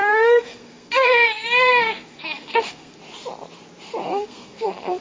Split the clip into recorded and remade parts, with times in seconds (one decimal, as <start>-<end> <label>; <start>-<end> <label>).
0.0-3.0 remade; 3.0-4.0 recorded; 4.0-5.0 remade